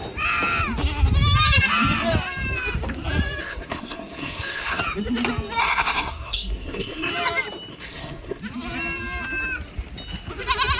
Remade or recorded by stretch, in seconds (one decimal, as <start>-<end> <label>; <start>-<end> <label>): 0.0-3.4 recorded; 3.4-4.8 remade; 4.8-5.6 recorded; 5.6-7.1 remade; 7.1-7.7 recorded; 7.7-8.4 remade; 8.4-10.8 recorded